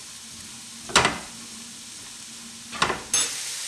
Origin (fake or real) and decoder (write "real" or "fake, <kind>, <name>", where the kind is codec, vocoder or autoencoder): real